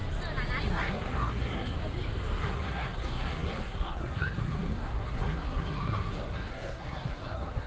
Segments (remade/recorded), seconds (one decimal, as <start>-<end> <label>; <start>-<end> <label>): 0.0-0.6 recorded; 0.6-1.8 remade; 1.8-2.4 recorded; 2.4-7.7 remade